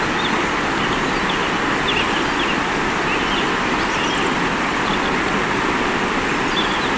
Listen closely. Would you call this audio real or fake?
real